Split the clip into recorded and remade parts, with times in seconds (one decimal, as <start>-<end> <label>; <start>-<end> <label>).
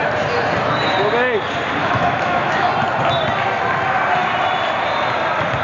0.0-1.8 recorded; 1.8-2.7 remade; 2.7-5.6 recorded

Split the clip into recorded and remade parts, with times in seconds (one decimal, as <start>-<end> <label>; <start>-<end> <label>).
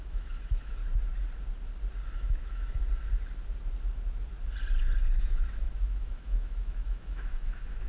0.0-0.8 remade; 0.8-2.1 recorded; 2.1-2.8 remade; 2.8-5.2 recorded; 5.2-7.9 remade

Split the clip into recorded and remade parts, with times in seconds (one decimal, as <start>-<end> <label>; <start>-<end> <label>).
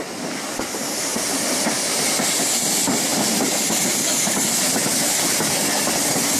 0.0-6.4 recorded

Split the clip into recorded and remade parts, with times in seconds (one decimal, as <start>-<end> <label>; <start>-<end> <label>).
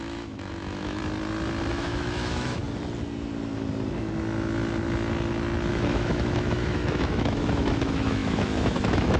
0.0-1.0 remade; 1.0-1.7 recorded; 1.7-2.6 remade; 2.6-5.7 recorded; 5.7-9.2 remade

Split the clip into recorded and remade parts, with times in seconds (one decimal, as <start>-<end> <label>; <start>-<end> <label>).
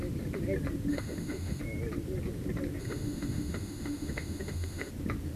0.0-0.9 recorded; 0.9-1.6 remade; 1.6-2.8 recorded; 2.8-4.9 remade; 4.9-5.4 recorded